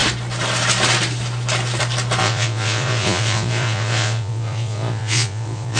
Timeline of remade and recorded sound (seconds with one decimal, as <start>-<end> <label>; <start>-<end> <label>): 0.0-2.2 recorded; 2.2-5.8 remade